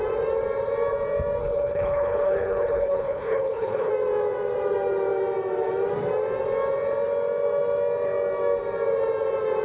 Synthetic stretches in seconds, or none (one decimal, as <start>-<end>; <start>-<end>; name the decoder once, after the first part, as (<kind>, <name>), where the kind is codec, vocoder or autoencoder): 1.4-3.9 (codec, HILCodec)